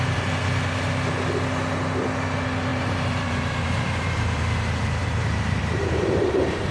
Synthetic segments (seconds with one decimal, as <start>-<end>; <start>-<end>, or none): 2.7-4.4; 5.0-6.7